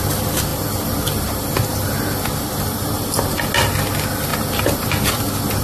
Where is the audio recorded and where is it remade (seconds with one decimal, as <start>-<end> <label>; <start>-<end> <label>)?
0.0-5.6 recorded